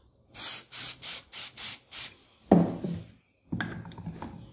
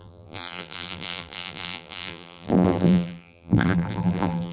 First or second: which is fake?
second